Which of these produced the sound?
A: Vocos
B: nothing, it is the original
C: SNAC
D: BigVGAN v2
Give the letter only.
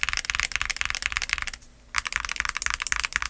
B